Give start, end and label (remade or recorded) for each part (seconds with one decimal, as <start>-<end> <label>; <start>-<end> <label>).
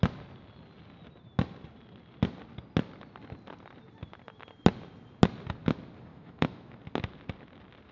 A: 0.0-6.1 recorded; 6.1-6.8 remade; 6.8-7.9 recorded